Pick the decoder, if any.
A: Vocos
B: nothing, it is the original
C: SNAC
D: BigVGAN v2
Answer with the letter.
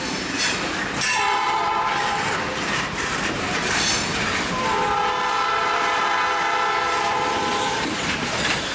D